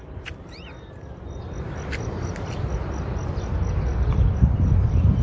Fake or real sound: real